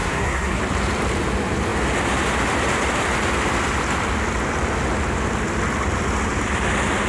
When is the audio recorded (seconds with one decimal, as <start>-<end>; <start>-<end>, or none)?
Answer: 0.6-7.1